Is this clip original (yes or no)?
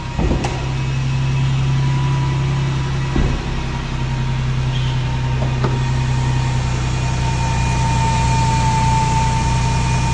yes